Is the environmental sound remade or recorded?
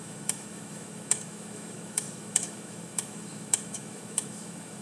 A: remade